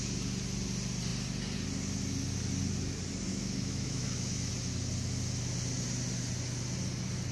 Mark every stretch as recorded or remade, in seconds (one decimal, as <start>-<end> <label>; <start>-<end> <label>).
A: 0.0-3.3 recorded; 3.3-4.5 remade; 4.5-7.3 recorded